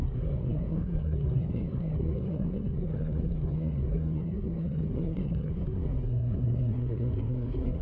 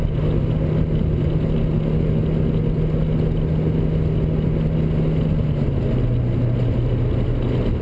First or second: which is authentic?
second